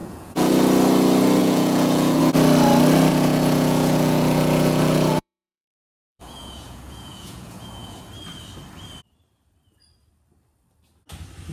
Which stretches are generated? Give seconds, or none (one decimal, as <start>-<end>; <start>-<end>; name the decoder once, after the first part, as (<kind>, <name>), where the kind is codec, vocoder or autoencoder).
0.0-0.5 (vocoder, Vocos); 1.4-2.2; 3.1-8.0